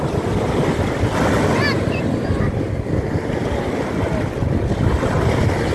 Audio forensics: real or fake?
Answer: real